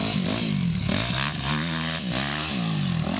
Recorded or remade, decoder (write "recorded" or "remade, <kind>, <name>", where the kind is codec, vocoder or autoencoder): recorded